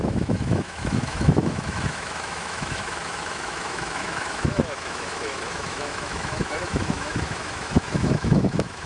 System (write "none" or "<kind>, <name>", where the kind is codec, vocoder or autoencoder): autoencoder, DAC-VAE